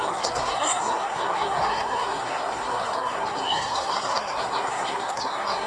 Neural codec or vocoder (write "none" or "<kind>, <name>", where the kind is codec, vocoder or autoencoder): codec, SNAC